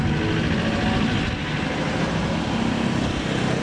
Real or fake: real